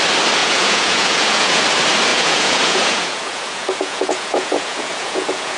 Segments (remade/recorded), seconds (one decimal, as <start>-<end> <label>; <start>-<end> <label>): 0.0-0.4 recorded; 0.4-1.6 remade; 1.6-2.1 recorded; 2.1-5.6 remade